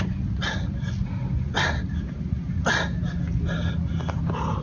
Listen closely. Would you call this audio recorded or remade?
recorded